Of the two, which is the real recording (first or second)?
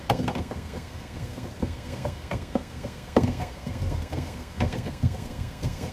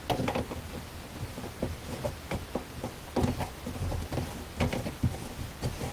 second